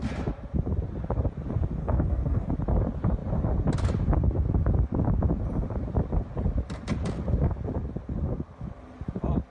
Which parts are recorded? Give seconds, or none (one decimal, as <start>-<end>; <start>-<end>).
0.0-1.8; 2.5-9.5